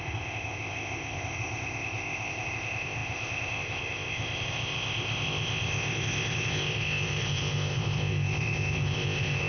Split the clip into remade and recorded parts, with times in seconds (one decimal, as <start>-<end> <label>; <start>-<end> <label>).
0.0-9.5 remade